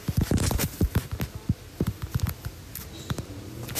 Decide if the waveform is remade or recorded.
recorded